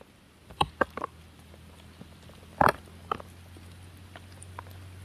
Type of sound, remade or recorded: recorded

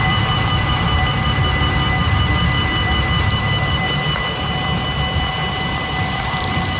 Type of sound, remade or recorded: remade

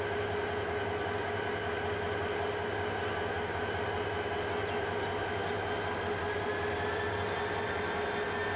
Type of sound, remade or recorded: recorded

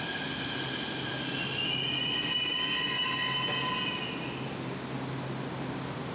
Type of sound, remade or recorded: recorded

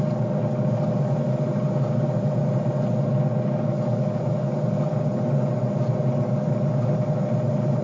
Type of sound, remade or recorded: recorded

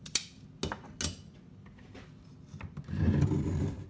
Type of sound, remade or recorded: recorded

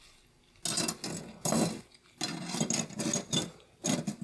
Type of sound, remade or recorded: recorded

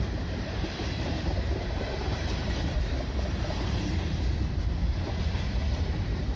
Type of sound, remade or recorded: remade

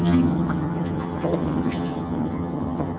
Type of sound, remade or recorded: remade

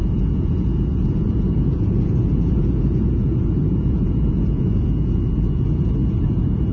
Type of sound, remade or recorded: remade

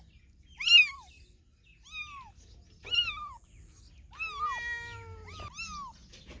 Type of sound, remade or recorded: recorded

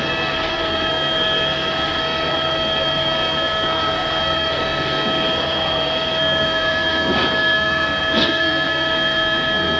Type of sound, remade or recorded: remade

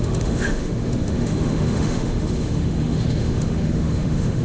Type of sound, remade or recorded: remade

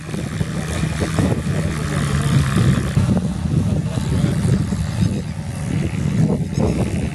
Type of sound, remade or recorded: recorded